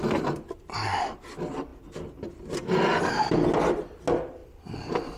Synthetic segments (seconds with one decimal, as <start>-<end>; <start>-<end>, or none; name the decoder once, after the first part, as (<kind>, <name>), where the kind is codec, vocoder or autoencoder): none